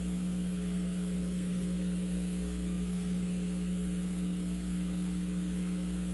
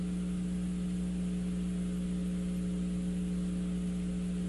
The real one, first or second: second